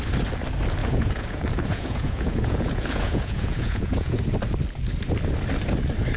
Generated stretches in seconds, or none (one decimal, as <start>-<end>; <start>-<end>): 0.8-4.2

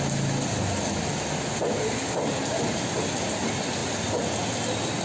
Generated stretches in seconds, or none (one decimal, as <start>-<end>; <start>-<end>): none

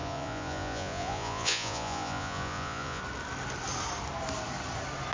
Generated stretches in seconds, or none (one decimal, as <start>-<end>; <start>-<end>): 0.0-3.0

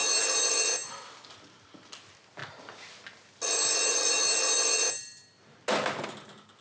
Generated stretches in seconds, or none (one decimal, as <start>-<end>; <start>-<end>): none